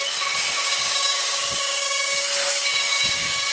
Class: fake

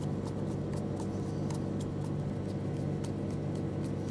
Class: real